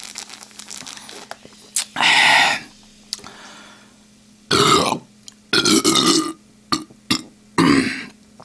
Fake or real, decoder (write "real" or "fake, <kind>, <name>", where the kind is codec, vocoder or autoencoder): real